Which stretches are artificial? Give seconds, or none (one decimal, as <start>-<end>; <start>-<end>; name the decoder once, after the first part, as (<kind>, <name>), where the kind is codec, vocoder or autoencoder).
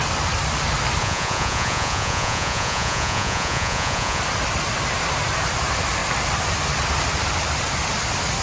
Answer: 1.0-4.2 (vocoder, Vocos)